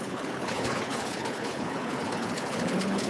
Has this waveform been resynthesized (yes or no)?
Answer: yes